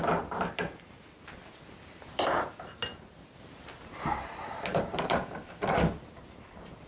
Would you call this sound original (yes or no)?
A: no